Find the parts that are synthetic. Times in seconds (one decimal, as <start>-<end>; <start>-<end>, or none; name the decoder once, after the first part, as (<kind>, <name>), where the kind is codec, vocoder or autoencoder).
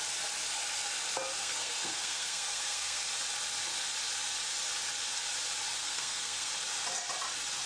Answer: 1.4-3.0 (codec, SNAC); 5.8-6.5